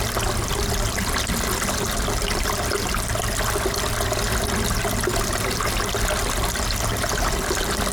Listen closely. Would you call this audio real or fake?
real